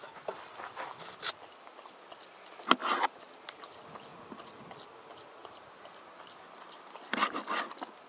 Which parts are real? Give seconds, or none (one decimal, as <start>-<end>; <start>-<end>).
0.0-4.1; 4.6-8.1